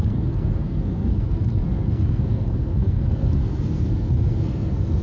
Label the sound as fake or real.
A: fake